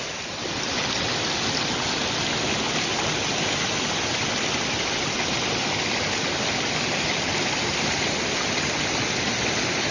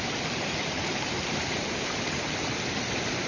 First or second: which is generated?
second